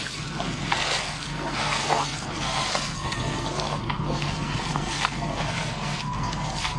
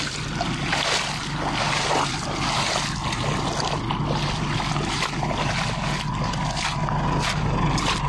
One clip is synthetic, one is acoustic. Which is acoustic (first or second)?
second